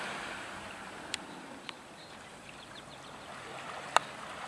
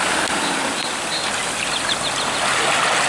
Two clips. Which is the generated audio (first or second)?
first